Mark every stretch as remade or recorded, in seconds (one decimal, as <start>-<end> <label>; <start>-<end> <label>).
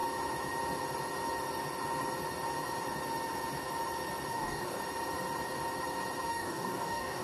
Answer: 0.0-4.3 recorded; 4.3-4.8 remade; 4.8-6.3 recorded; 6.3-7.2 remade